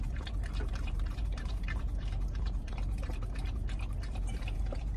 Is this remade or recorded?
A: remade